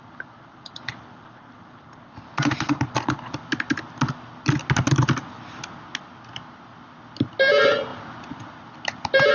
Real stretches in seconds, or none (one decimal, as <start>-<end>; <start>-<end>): 0.0-9.3